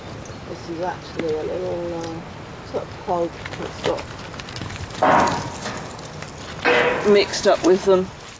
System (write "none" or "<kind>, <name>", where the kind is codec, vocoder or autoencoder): none